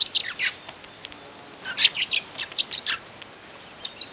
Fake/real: real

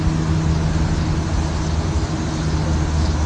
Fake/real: real